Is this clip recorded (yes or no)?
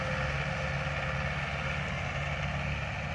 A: yes